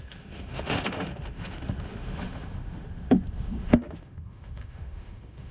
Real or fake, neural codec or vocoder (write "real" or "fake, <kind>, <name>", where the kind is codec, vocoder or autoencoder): fake, autoencoder, DAC-VAE